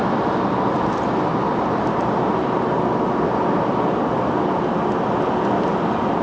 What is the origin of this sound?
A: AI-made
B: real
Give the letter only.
B